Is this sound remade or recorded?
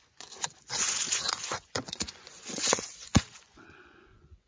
remade